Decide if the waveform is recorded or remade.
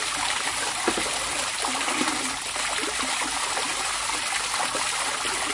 recorded